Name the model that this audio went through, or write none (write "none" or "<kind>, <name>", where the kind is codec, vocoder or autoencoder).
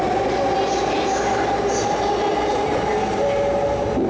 none